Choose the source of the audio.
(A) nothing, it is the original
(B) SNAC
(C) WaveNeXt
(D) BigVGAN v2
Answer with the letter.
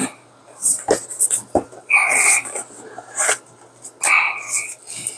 A